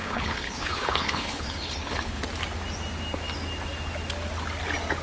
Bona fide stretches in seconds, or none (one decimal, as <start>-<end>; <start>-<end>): 2.2-5.0